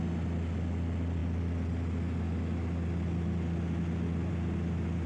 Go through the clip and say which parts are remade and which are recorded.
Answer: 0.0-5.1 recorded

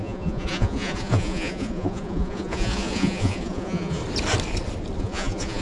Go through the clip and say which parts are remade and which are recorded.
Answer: 0.0-4.0 remade; 4.0-5.0 recorded; 5.0-5.6 remade